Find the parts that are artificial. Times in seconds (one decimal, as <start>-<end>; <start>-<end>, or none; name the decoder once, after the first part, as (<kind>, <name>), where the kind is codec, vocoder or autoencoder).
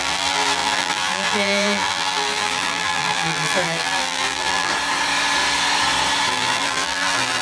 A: 0.0-4.7 (vocoder, BigVGAN v2); 6.3-7.4